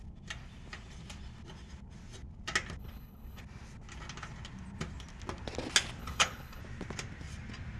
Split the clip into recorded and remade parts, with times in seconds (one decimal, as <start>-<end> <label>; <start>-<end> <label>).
0.0-2.8 recorded; 2.8-3.4 remade; 3.4-6.0 recorded; 6.0-6.6 remade; 6.6-7.8 recorded